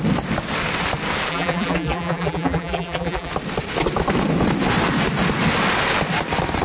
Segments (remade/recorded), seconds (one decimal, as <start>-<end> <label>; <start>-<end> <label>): 0.0-1.3 recorded; 1.3-3.3 remade; 3.3-6.6 recorded

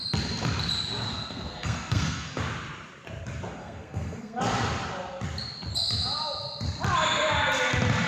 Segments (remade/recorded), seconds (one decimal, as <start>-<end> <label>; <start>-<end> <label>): 0.0-1.1 recorded; 1.1-2.4 remade; 2.4-3.6 recorded; 3.6-4.4 remade; 4.4-8.1 recorded

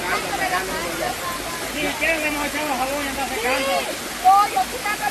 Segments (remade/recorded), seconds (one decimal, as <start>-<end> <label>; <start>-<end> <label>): 0.0-5.1 recorded